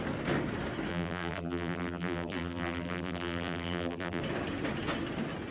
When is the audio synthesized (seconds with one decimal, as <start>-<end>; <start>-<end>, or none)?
0.9-4.2

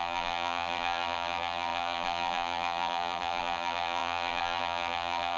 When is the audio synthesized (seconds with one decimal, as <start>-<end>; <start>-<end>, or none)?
0.0-5.4

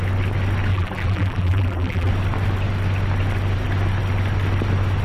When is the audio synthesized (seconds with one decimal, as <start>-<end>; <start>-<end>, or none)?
0.7-2.1

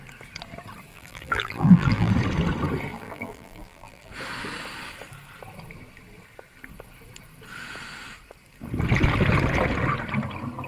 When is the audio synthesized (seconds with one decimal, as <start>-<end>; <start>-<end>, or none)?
0.9-2.1; 2.9-4.1

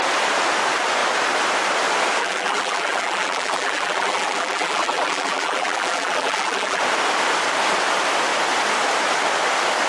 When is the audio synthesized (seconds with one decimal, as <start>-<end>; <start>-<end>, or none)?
2.2-6.8

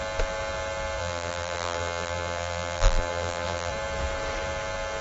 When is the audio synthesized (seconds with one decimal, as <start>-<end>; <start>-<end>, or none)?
1.0-3.7

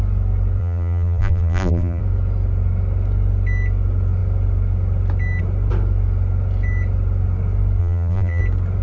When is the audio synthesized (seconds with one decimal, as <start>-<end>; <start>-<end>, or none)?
0.6-2.0; 7.8-8.4